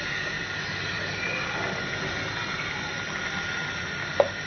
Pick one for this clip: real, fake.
real